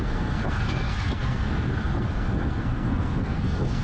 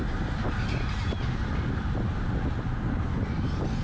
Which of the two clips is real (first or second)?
second